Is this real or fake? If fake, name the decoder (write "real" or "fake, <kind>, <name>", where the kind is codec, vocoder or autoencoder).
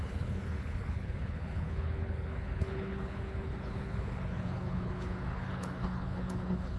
fake, codec, HILCodec